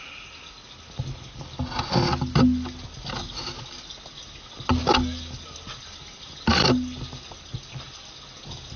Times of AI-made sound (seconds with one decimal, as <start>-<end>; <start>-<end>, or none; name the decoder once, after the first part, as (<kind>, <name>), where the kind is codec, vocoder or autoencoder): none